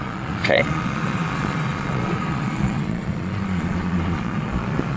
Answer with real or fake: fake